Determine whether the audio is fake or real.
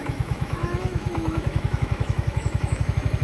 fake